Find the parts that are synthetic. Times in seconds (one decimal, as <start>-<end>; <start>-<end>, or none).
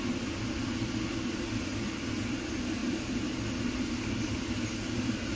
none